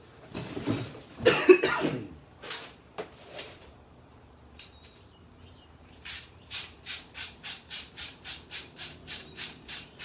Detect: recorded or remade remade